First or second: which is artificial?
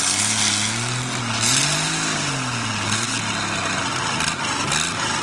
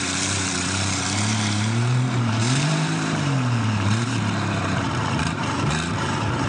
second